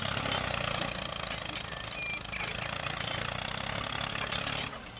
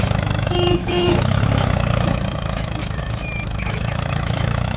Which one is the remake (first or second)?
second